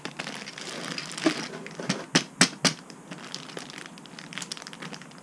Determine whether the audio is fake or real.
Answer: real